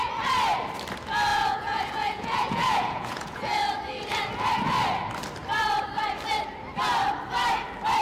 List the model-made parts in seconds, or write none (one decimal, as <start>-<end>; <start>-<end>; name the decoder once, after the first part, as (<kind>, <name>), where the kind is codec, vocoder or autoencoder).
1.3-3.6 (vocoder, Vocos)